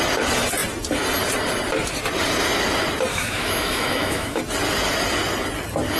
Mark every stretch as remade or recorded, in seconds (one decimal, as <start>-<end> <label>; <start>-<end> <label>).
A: 0.0-3.1 recorded; 3.1-4.4 remade; 4.4-6.0 recorded